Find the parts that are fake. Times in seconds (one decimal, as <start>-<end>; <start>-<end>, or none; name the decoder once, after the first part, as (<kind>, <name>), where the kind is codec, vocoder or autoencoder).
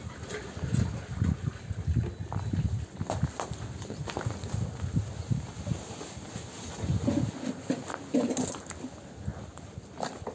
none